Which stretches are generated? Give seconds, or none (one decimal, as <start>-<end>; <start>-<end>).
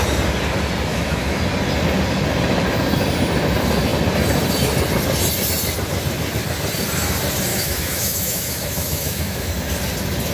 0.9-1.4; 7.5-9.5